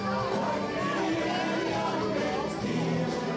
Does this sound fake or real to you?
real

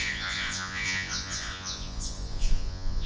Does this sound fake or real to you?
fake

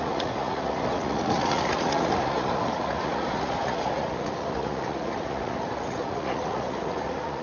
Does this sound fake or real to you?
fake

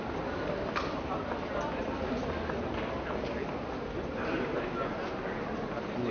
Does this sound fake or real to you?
real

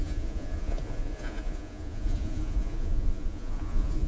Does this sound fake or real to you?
fake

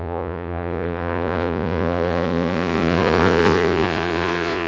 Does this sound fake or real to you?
fake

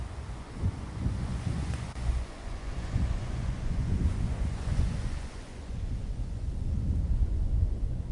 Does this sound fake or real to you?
fake